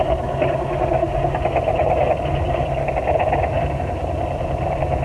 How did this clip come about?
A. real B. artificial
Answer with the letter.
A